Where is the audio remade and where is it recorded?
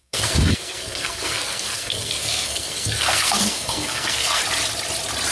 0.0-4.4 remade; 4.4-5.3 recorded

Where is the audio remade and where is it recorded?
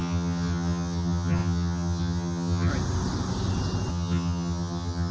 0.0-2.7 remade; 2.7-3.9 recorded; 3.9-5.1 remade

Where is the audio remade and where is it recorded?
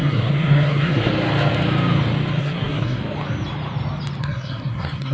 0.0-1.1 remade; 1.1-2.4 recorded; 2.4-3.0 remade; 3.0-4.2 recorded; 4.2-5.1 remade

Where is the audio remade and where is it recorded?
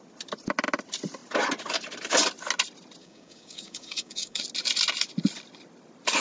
0.0-3.0 recorded; 3.0-4.4 remade; 4.4-6.2 recorded